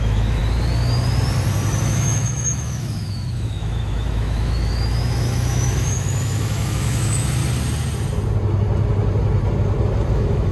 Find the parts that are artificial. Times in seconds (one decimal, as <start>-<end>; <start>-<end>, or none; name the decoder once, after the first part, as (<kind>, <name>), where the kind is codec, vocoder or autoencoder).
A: 0.0-0.4 (autoencoder, DAC-VAE); 1.8-7.4; 10.1-10.5